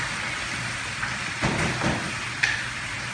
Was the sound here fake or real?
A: real